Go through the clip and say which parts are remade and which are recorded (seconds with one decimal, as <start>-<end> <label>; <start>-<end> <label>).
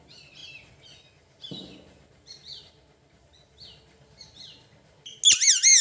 0.0-5.8 recorded